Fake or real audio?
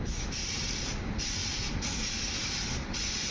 real